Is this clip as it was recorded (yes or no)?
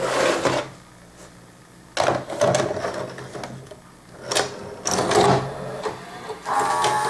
yes